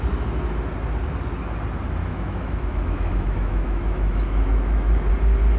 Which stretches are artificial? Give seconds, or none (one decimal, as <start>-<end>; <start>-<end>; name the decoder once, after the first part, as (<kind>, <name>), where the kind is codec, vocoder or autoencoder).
2.1-5.1 (autoencoder, DAC-VAE)